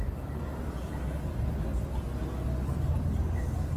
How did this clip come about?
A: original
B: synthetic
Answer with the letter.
A